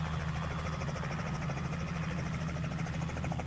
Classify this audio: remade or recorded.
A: recorded